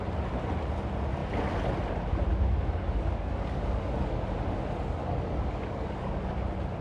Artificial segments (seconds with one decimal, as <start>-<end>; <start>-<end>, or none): 2.3-4.2; 5.0-6.3